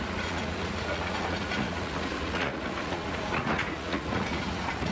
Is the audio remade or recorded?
remade